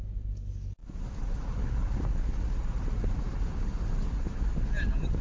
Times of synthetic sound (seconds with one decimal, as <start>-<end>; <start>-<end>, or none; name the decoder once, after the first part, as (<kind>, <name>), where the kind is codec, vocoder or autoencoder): none